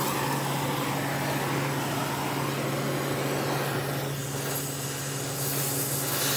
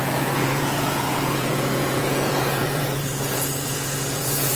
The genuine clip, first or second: first